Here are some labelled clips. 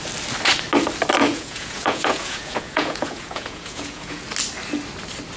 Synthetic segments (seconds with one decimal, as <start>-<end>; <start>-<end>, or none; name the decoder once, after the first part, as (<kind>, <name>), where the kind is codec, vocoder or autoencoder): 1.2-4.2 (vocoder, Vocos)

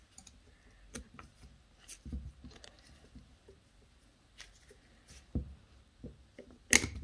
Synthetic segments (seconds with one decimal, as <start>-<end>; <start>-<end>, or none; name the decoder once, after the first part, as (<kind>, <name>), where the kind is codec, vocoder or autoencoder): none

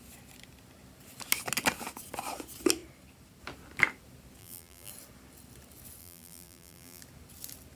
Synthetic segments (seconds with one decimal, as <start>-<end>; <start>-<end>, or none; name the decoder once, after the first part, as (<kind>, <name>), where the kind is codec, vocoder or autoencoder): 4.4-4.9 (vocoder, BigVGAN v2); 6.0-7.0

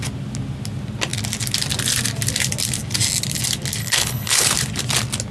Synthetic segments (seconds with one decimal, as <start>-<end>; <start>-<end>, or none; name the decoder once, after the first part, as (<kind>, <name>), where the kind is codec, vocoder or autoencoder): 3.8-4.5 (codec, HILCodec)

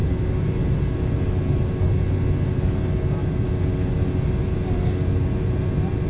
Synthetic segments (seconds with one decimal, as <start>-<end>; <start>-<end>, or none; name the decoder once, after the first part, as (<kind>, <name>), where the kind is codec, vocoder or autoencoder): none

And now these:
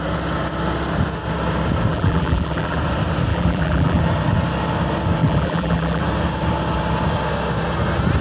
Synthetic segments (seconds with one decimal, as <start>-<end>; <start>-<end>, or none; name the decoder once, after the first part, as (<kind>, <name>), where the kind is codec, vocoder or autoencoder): 1.9-2.8 (vocoder, BigVGAN v2); 3.3-4.0; 5.2-6.0